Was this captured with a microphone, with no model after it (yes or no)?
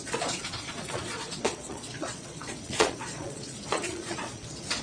no